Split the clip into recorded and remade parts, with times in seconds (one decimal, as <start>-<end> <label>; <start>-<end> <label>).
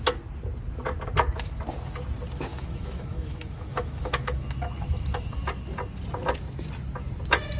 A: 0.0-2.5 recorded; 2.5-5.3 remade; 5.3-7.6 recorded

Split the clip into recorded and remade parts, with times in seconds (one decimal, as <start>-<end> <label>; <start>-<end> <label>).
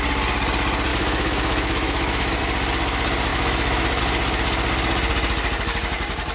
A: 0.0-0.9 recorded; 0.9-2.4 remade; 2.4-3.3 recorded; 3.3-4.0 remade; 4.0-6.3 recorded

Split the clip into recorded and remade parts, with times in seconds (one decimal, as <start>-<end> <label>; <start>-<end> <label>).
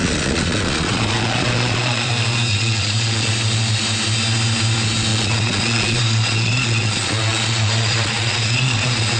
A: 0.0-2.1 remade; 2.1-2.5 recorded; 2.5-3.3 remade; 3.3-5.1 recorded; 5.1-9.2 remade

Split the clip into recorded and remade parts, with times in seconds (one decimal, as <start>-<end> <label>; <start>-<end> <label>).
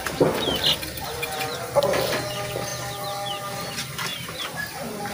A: 0.0-4.1 recorded; 4.1-5.1 remade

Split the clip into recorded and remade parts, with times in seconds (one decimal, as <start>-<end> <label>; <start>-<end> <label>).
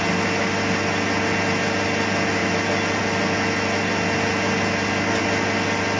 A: 0.0-6.0 recorded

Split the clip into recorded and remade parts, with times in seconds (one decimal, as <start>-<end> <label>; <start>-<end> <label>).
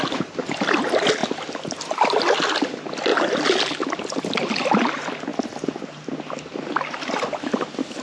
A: 0.0-8.0 recorded